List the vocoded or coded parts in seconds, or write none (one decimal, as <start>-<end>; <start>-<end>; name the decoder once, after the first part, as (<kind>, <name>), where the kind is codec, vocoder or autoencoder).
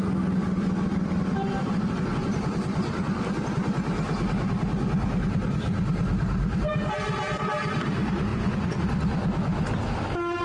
8.3-8.8 (vocoder, Vocos)